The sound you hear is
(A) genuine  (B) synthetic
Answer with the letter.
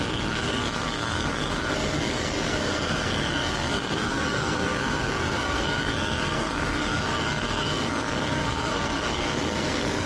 B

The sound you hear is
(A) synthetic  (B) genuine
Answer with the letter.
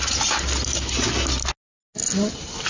B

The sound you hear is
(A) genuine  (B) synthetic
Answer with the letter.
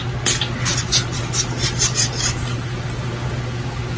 A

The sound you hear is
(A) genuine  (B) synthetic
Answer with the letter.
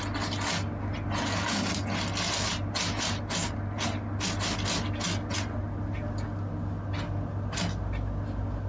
A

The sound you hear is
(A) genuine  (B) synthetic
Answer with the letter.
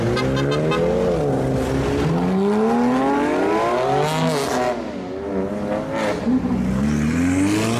A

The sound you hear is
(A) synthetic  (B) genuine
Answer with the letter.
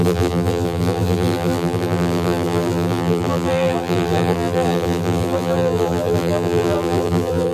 A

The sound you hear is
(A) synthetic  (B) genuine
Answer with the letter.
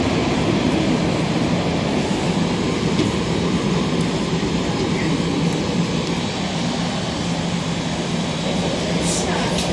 B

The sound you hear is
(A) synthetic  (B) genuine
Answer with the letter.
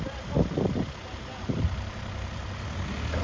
B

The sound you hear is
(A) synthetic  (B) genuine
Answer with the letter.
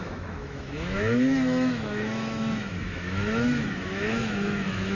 A